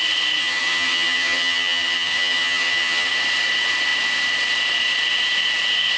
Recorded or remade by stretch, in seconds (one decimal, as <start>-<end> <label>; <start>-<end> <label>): 0.0-0.4 recorded; 0.4-3.1 remade; 3.1-6.0 recorded